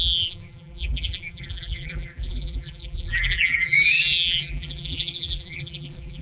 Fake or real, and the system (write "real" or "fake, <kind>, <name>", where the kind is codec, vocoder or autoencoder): fake, vocoder, BigVGAN v2